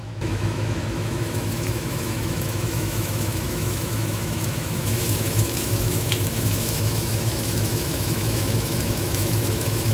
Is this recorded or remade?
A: remade